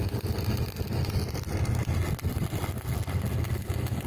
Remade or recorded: recorded